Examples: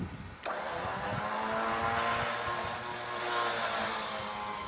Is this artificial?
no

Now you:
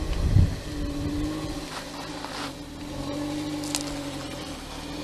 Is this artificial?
no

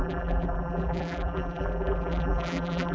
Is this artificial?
yes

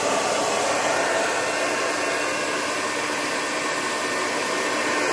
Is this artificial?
no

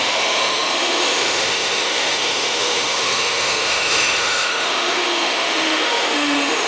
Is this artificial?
yes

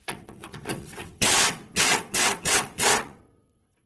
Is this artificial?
yes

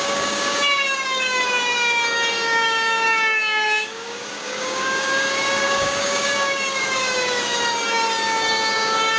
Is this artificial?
yes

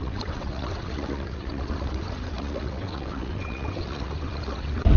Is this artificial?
yes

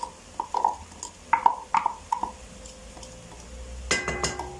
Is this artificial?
no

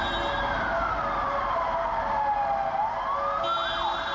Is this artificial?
no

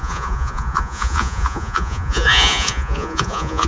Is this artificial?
yes